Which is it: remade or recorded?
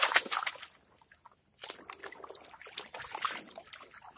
recorded